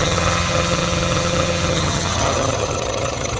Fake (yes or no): yes